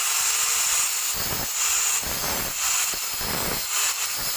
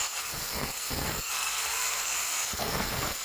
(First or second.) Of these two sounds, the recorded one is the first